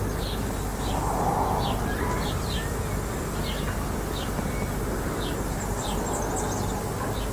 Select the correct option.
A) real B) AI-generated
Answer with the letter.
A